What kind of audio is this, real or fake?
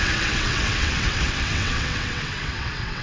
fake